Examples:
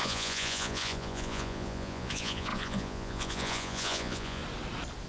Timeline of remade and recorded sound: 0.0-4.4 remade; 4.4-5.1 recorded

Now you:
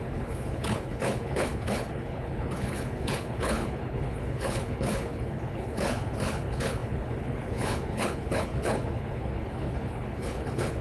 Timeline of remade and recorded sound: 0.0-10.8 remade